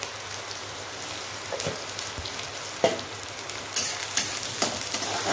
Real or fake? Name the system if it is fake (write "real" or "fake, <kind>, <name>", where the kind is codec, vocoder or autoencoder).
real